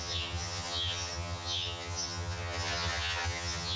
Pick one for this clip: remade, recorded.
remade